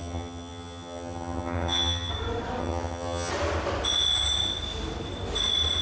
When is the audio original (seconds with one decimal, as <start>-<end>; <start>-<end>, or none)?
2.1-2.6; 3.3-5.8